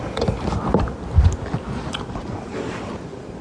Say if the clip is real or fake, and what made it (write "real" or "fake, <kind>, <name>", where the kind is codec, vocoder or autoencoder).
real